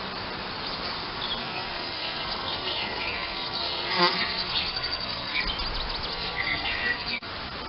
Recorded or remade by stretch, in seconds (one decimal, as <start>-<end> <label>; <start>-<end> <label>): 0.0-1.4 recorded; 1.4-5.4 remade; 5.4-6.1 recorded; 6.1-7.3 remade; 7.3-7.7 recorded